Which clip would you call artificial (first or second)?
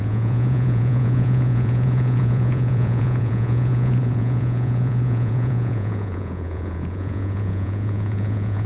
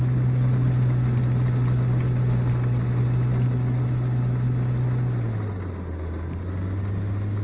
first